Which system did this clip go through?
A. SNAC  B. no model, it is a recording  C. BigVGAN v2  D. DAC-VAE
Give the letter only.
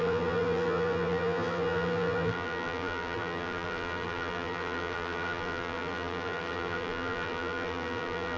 C